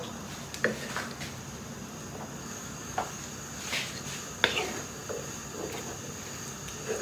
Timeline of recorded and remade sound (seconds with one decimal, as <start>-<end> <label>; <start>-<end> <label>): 0.0-2.4 recorded; 2.4-3.3 remade; 3.3-7.0 recorded